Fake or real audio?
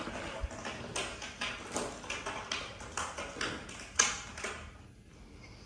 real